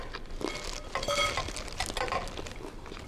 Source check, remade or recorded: recorded